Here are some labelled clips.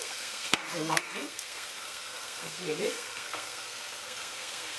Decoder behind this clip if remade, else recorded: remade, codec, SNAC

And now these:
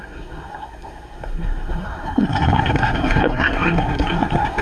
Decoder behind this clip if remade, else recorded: remade, codec, SNAC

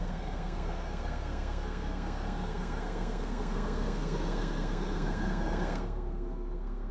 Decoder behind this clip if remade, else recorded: remade, codec, SNAC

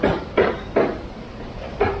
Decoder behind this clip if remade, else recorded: recorded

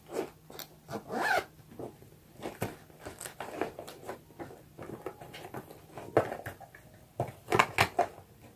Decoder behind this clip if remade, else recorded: recorded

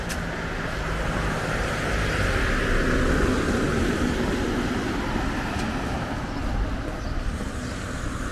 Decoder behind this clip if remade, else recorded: recorded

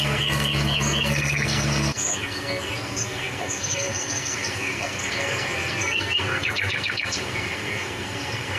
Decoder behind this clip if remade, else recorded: remade, codec, SNAC